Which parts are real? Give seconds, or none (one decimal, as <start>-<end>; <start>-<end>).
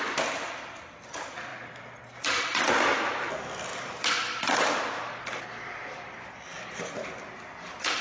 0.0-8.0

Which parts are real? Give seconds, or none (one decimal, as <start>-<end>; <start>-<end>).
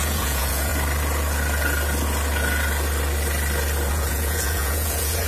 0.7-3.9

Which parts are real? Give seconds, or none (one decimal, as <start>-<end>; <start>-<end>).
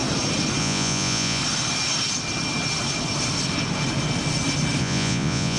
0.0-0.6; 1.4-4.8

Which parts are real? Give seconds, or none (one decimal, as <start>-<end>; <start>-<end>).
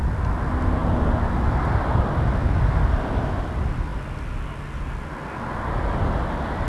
0.0-6.7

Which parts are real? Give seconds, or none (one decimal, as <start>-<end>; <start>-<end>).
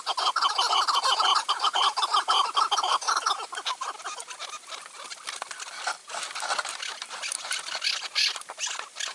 0.0-9.1